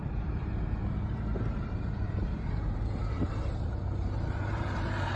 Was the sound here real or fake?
fake